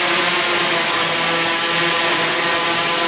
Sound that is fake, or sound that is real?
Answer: real